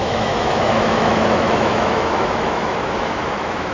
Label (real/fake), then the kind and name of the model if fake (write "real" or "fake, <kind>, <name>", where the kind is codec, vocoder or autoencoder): fake, autoencoder, DAC-VAE